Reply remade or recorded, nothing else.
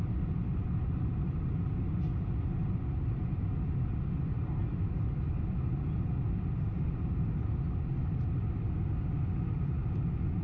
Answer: recorded